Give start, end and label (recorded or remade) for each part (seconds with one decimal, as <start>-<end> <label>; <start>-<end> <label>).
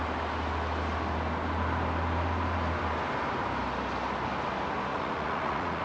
0.0-4.9 recorded; 4.9-5.8 remade